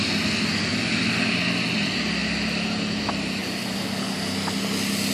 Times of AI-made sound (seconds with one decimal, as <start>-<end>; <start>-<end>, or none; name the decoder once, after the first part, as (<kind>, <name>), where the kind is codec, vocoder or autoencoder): none